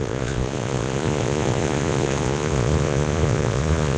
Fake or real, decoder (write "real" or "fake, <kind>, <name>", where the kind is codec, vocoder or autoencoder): fake, vocoder, Vocos